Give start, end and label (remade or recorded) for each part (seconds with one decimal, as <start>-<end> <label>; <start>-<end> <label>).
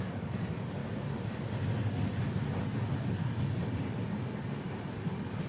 0.0-0.8 remade; 0.8-3.0 recorded; 3.0-3.6 remade; 3.6-4.9 recorded; 4.9-5.5 remade